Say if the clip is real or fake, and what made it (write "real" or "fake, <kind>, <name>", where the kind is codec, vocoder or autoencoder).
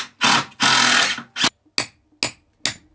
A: real